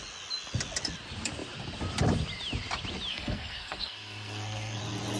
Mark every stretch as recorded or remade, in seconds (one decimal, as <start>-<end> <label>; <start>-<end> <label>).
0.0-3.1 recorded; 3.1-4.8 remade; 4.8-5.2 recorded